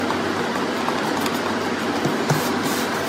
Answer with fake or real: real